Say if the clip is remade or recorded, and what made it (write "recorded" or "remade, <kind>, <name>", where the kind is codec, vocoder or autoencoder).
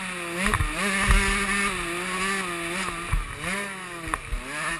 recorded